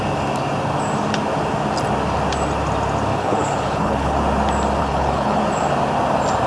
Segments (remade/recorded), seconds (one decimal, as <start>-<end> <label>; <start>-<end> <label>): 0.0-3.1 recorded; 3.1-4.2 remade; 4.2-4.8 recorded; 4.8-5.4 remade; 5.4-6.5 recorded